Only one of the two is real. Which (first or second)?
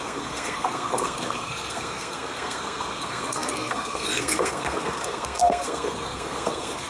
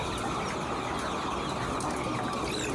second